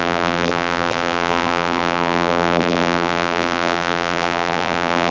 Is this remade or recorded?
remade